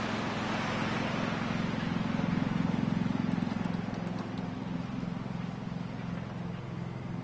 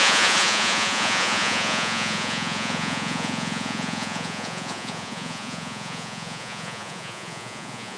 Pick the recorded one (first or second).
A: first